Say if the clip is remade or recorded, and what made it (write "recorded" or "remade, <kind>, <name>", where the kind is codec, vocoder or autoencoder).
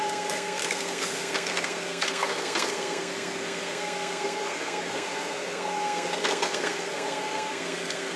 remade, codec, SNAC